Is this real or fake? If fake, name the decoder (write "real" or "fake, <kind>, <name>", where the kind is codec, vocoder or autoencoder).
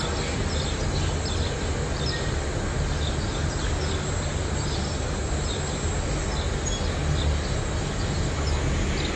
real